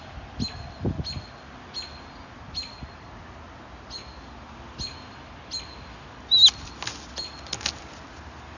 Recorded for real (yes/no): yes